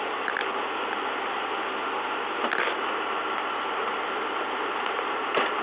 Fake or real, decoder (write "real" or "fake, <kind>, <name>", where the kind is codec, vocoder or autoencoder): real